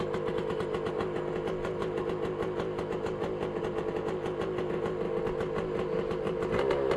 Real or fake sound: real